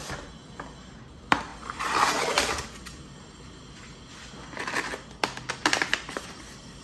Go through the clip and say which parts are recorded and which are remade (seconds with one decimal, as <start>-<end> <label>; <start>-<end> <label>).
0.0-6.8 recorded